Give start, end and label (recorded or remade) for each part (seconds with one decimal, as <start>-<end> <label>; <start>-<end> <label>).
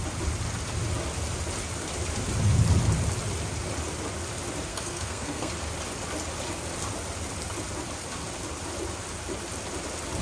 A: 0.0-4.7 recorded; 4.7-5.5 remade; 5.5-10.2 recorded